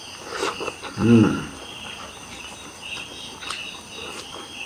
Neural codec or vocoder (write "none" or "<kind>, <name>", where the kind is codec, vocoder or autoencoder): none